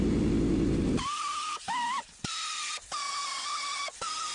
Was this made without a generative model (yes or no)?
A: yes